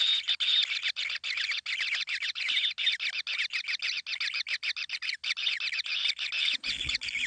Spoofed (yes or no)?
no